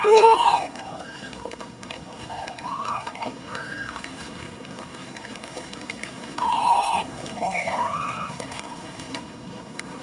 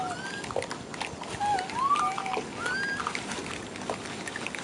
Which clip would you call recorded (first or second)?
second